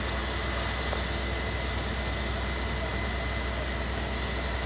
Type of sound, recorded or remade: recorded